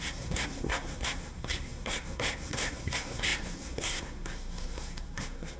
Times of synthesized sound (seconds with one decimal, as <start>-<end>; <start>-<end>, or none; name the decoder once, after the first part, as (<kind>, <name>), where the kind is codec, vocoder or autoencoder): 0.0-5.6 (codec, SNAC)